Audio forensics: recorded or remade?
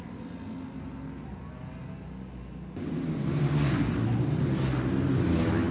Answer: recorded